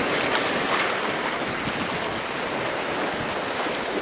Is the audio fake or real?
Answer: real